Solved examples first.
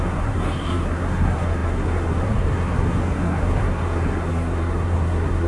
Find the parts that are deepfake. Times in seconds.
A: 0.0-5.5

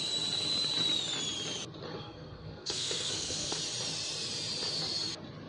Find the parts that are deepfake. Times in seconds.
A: 1.9-3.6